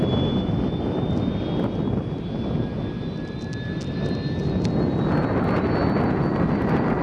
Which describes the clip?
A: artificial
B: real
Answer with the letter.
B